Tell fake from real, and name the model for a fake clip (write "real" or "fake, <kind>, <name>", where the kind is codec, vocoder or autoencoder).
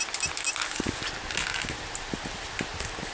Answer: real